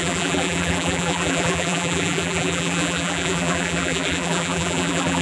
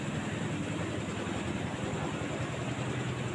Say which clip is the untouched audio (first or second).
second